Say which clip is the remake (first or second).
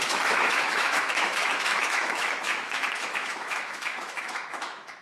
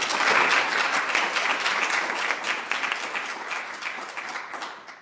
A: first